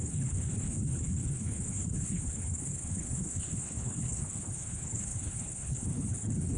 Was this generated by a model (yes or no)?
yes